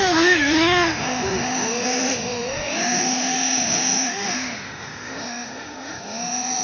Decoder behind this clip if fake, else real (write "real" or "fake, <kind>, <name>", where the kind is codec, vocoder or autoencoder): fake, autoencoder, DAC-VAE